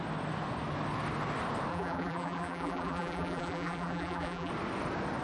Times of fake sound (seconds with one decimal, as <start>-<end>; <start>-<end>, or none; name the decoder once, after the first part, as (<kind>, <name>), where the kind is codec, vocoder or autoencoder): 1.7-4.5 (vocoder, BigVGAN v2)